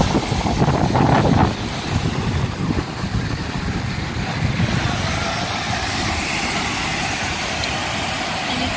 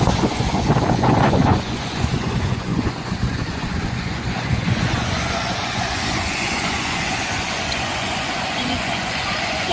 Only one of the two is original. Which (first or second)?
first